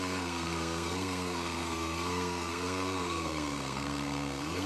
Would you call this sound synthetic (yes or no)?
yes